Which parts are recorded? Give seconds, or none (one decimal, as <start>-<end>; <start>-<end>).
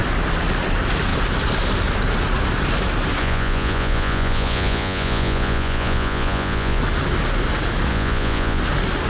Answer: 0.0-3.2; 6.8-7.9; 8.6-9.1